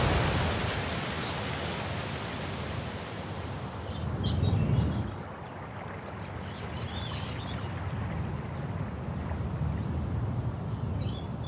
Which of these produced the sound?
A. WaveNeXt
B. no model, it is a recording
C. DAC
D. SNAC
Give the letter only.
B